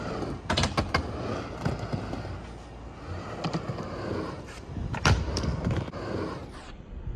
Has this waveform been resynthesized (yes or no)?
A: no